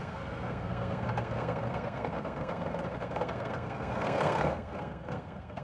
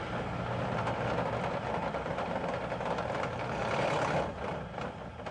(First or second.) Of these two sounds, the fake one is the first